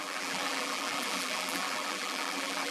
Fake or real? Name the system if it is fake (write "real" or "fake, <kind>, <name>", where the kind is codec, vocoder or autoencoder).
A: fake, vocoder, BigVGAN v2